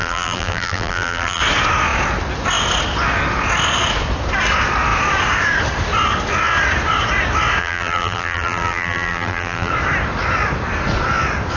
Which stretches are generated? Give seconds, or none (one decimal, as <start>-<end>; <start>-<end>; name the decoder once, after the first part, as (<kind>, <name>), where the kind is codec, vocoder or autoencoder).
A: 0.0-1.4 (vocoder, BigVGAN v2); 7.6-9.7